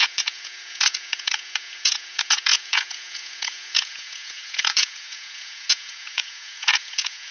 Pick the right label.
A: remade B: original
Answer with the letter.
A